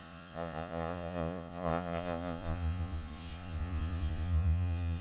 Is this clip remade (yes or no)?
yes